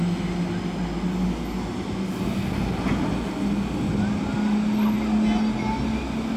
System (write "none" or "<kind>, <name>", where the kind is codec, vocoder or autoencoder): none